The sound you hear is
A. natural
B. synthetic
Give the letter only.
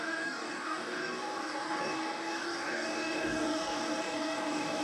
B